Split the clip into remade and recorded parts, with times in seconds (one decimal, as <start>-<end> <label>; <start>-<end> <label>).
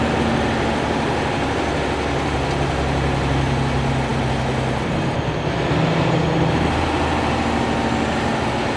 0.0-8.8 recorded